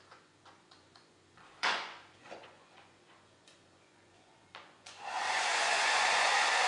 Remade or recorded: remade